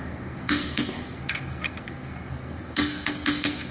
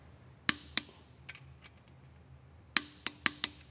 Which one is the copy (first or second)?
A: first